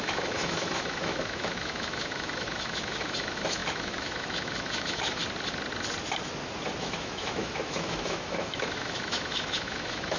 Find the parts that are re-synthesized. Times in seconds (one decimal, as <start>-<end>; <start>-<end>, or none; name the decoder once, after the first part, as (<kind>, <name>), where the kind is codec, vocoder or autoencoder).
0.0-5.2 (autoencoder, DAC-VAE); 6.8-10.2